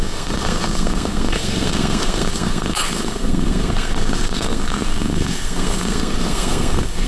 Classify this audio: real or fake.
fake